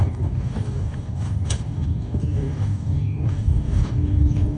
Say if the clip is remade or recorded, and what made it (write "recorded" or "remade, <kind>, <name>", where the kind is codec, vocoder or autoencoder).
remade, codec, DAC